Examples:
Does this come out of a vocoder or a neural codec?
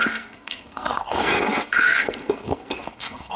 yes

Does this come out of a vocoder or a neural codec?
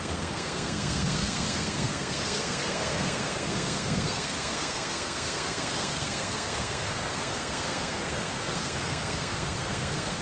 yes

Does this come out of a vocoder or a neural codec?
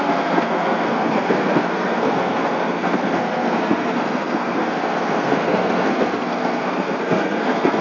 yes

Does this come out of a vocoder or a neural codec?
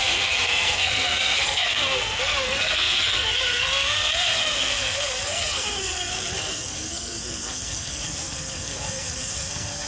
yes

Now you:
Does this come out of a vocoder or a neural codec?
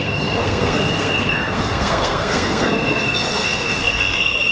yes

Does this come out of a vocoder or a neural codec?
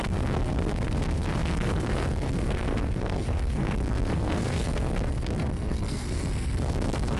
yes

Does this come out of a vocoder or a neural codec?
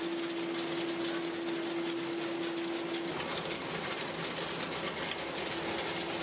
no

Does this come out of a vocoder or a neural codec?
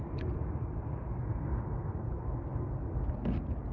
no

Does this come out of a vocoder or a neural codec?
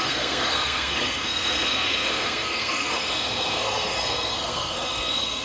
yes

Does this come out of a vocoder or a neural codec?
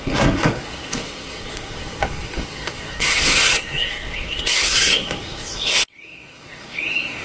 yes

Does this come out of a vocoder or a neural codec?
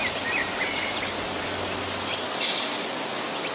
no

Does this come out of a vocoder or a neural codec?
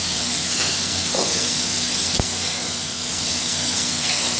yes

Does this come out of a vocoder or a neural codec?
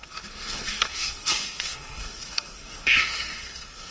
yes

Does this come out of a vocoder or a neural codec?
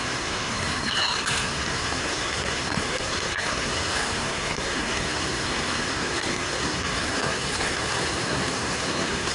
yes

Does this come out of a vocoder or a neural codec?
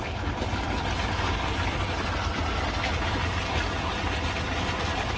no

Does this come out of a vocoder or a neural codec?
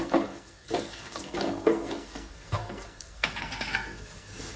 yes